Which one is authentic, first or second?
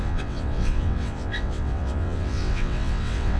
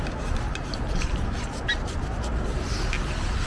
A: second